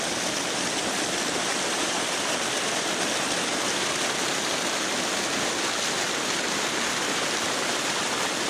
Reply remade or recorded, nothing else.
recorded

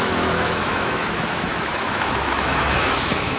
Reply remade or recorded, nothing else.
remade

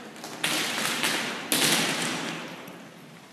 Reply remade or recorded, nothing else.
recorded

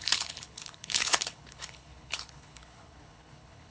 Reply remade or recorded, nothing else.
remade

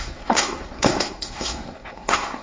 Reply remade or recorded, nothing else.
remade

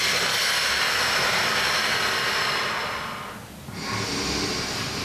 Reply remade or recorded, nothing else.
recorded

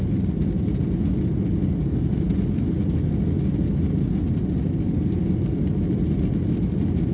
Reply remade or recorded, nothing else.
recorded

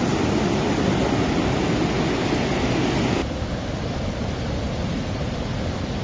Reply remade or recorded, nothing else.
recorded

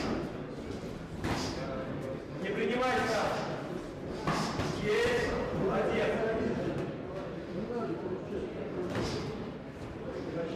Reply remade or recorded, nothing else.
recorded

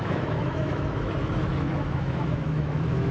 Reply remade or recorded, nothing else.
remade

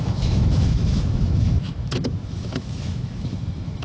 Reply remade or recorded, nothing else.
remade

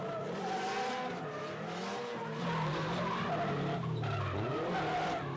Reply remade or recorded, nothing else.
recorded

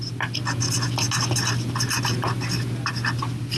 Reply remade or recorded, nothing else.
recorded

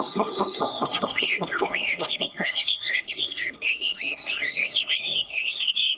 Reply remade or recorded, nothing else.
remade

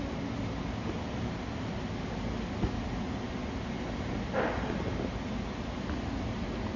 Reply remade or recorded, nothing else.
recorded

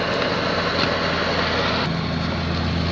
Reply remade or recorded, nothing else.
recorded